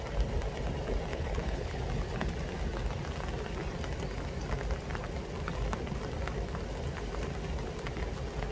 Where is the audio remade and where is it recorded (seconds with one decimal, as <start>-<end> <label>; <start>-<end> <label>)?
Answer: 0.0-1.1 recorded; 1.1-1.8 remade; 1.8-8.5 recorded